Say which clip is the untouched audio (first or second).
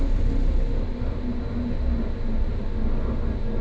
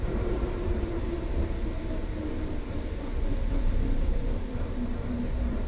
first